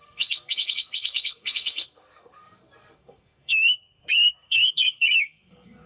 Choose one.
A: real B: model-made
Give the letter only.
B